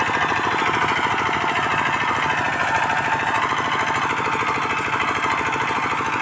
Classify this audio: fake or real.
real